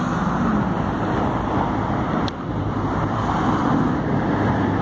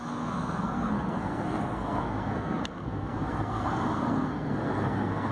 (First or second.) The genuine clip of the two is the first